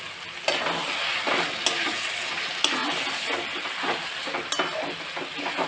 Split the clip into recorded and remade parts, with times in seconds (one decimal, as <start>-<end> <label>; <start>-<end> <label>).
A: 0.0-2.8 recorded; 2.8-4.5 remade; 4.5-5.7 recorded